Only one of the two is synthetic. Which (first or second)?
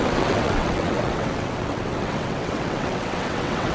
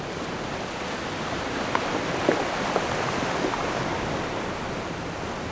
first